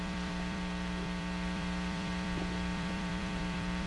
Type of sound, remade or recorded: remade